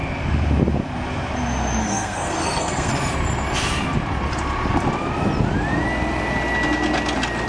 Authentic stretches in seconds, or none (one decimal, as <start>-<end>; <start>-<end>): 0.0-1.8; 2.9-7.5